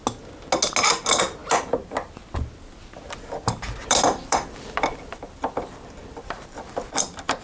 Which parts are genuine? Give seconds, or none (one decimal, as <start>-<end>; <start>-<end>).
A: 0.0-3.8; 6.6-7.4